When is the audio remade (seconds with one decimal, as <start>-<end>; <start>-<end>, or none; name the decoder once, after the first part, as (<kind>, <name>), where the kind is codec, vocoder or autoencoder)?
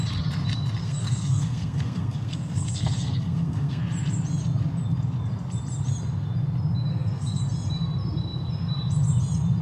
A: 0.8-3.8 (codec, SNAC); 6.9-7.4